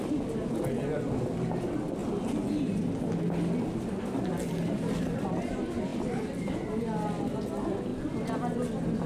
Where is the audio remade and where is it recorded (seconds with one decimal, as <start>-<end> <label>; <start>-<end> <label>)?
0.0-5.9 recorded; 5.9-6.8 remade; 6.8-9.1 recorded